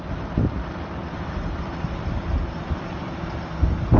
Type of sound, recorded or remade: recorded